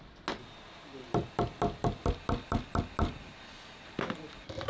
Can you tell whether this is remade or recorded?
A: recorded